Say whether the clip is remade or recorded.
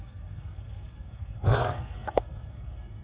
remade